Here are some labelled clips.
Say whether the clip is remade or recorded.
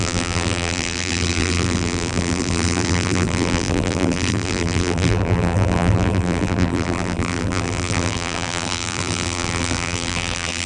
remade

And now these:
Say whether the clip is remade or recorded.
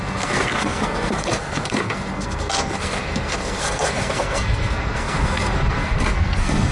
remade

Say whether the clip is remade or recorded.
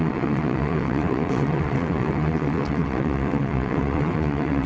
remade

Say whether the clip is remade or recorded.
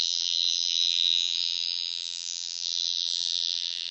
remade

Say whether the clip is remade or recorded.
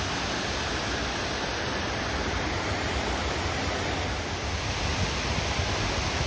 recorded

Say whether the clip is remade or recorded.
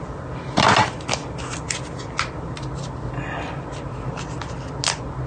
recorded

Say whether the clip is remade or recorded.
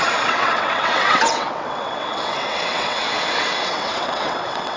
remade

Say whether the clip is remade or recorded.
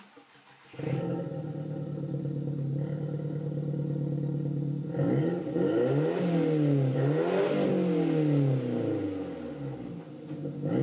recorded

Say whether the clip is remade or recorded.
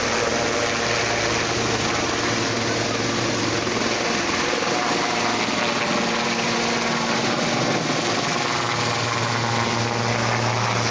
recorded